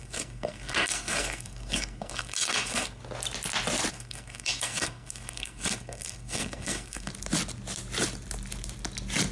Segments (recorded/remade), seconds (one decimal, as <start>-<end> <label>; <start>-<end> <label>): 0.0-3.0 remade; 3.0-3.9 recorded; 3.9-7.1 remade; 7.1-9.3 recorded